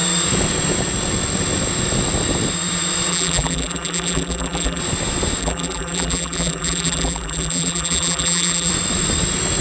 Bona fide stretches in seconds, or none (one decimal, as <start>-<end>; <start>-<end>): 0.0-3.1; 4.8-5.4; 8.7-9.6